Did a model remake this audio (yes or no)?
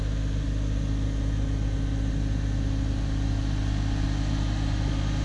no